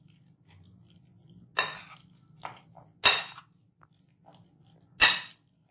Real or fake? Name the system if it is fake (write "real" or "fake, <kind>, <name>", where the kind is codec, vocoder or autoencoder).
real